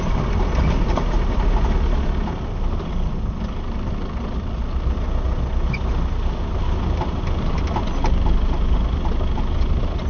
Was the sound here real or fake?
real